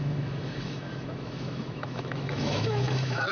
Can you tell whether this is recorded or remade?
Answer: remade